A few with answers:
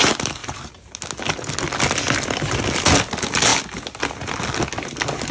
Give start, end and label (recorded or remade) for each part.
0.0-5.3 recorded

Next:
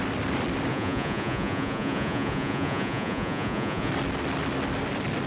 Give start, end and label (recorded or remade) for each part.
0.0-0.7 recorded; 0.7-3.9 remade; 3.9-5.3 recorded

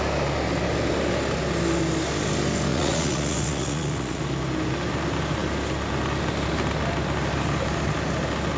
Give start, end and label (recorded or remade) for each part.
0.0-2.7 recorded; 2.7-4.2 remade; 4.2-8.6 recorded

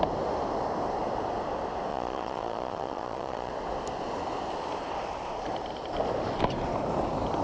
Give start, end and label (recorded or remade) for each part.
0.0-1.9 recorded; 1.9-3.5 remade; 3.5-7.4 recorded

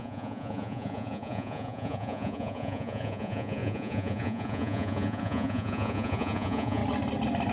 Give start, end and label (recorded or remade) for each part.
0.0-6.8 remade; 6.8-7.5 recorded

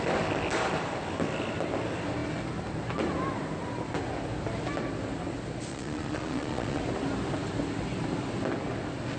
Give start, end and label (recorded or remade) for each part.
0.0-5.7 recorded; 5.7-6.8 remade; 6.8-9.2 recorded